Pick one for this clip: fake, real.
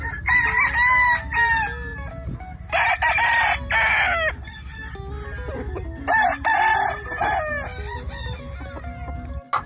real